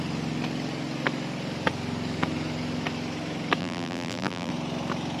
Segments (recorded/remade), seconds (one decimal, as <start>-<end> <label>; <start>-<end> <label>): 0.0-3.6 recorded; 3.6-4.5 remade; 4.5-5.2 recorded